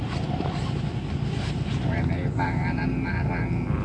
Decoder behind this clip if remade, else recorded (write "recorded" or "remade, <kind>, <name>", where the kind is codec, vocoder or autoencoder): recorded